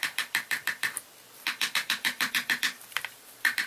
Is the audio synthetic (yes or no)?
yes